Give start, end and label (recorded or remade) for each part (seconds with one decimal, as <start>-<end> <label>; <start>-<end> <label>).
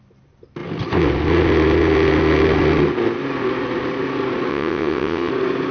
0.0-4.5 recorded; 4.5-5.3 remade; 5.3-5.7 recorded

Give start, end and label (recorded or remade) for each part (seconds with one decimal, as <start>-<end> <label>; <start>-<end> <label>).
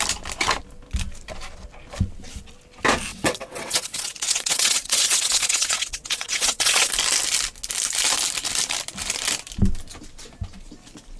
0.0-3.1 recorded; 3.1-6.9 remade; 6.9-11.2 recorded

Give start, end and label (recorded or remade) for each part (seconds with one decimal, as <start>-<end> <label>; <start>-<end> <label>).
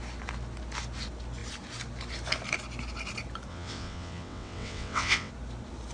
0.0-3.5 recorded; 3.5-5.3 remade; 5.3-5.9 recorded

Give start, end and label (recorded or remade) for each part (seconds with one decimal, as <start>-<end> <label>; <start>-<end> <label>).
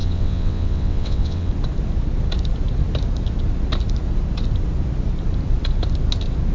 0.0-1.5 remade; 1.5-6.5 recorded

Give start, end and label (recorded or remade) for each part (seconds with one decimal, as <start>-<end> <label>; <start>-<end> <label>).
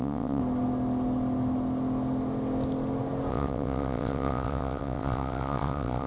0.0-0.4 remade; 0.4-3.3 recorded; 3.3-6.1 remade